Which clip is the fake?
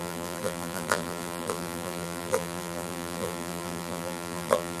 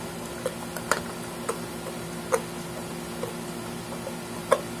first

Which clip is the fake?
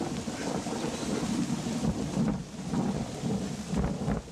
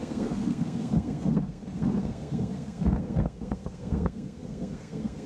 second